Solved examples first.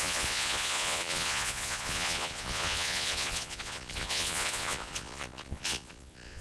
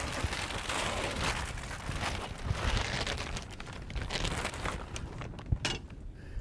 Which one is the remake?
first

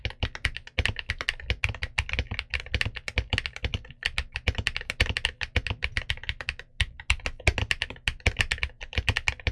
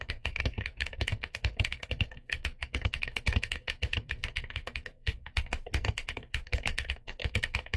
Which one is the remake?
second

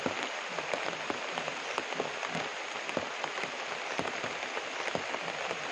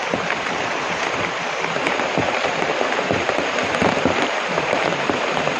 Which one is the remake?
second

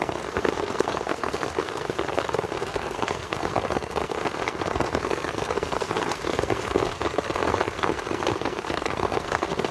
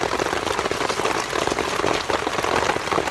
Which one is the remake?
first